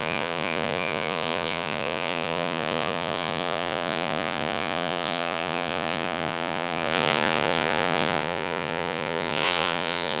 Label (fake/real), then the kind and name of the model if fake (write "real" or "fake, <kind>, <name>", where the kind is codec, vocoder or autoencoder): fake, vocoder, Vocos